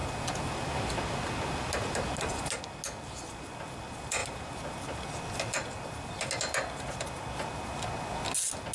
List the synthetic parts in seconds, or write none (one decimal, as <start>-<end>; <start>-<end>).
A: none